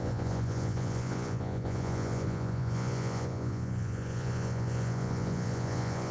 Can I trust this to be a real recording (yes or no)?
no